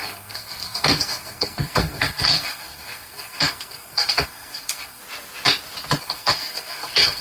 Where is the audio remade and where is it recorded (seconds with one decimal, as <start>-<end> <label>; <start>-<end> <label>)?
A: 0.0-5.0 remade; 5.0-6.0 recorded; 6.0-7.2 remade